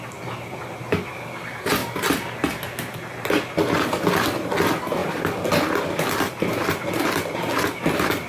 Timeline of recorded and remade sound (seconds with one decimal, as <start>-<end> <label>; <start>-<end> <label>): 0.0-8.3 recorded